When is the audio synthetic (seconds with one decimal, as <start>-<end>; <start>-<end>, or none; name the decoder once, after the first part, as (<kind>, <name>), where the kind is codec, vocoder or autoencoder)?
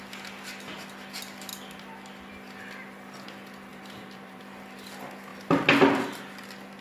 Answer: 3.7-4.4 (vocoder, BigVGAN v2)